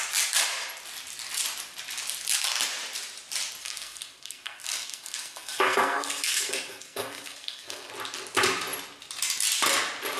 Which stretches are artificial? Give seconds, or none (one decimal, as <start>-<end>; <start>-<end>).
3.6-7.9